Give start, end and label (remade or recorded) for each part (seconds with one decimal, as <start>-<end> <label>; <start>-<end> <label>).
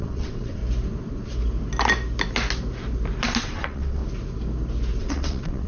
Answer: 0.0-0.6 remade; 0.6-3.4 recorded; 3.4-4.0 remade; 4.0-5.0 recorded; 5.0-5.7 remade